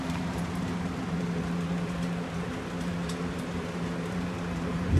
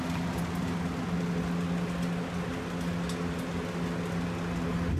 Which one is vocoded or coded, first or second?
first